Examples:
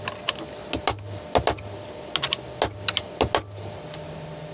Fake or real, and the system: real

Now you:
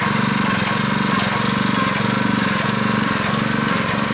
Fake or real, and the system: real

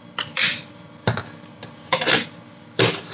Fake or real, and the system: fake, vocoder, BigVGAN v2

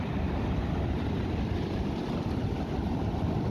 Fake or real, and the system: real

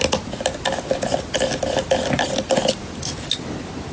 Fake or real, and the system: real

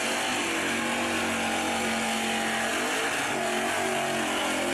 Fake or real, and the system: real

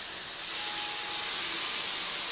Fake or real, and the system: real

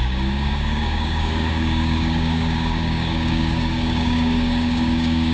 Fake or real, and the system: fake, codec, DAC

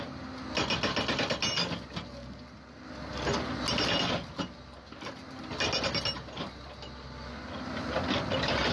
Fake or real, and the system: real